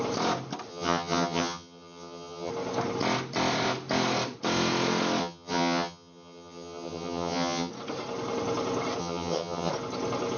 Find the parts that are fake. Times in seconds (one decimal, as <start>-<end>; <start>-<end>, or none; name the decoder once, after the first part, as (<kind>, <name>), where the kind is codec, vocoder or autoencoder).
0.7-2.5 (vocoder, HiFi-GAN); 5.2-7.7; 9.0-9.7